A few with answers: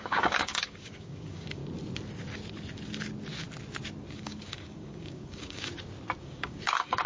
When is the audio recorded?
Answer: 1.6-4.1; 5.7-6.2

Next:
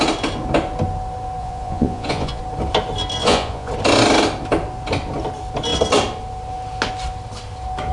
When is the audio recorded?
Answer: 0.0-1.4; 2.4-3.2; 3.7-7.9

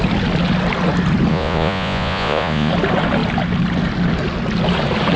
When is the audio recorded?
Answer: 0.0-1.3; 2.7-5.2

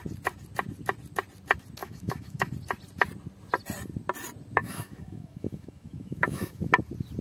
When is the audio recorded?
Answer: 0.0-1.8; 2.5-4.6; 6.7-7.2